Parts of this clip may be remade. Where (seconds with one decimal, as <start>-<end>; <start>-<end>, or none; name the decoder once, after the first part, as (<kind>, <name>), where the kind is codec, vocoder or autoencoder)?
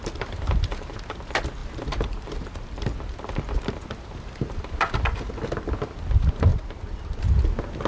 0.0-1.0 (vocoder, BigVGAN v2); 1.6-5.3; 6.5-7.2